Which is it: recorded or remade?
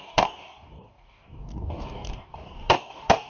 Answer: remade